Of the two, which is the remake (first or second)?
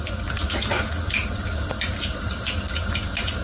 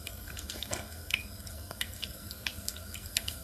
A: second